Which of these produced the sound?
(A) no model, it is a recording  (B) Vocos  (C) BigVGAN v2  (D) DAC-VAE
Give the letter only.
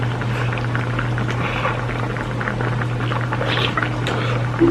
A